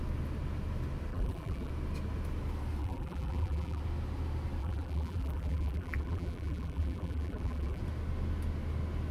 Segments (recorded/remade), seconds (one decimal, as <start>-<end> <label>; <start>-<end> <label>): 0.0-1.1 recorded; 1.1-1.7 remade; 1.7-2.8 recorded; 2.8-3.8 remade; 3.8-4.6 recorded; 4.6-7.8 remade; 7.8-9.1 recorded